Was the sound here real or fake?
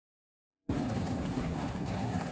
fake